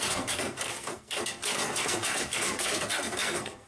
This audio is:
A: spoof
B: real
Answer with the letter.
A